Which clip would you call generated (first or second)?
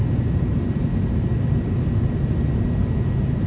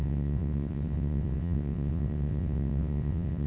second